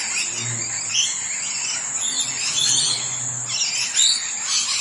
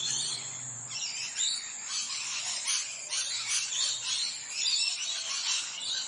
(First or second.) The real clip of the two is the first